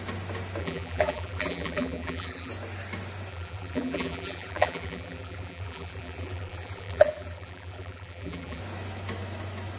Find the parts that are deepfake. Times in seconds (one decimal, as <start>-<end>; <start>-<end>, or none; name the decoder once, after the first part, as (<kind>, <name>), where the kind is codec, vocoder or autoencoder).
0.6-2.5 (vocoder, BigVGAN v2); 3.3-8.6